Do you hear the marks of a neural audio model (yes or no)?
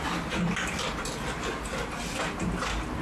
no